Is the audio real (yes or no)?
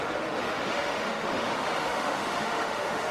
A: no